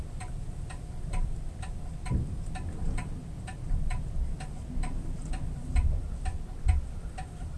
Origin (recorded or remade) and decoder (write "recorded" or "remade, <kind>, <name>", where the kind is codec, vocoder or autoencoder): recorded